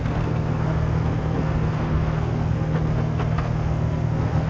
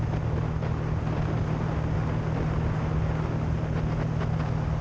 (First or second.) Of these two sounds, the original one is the second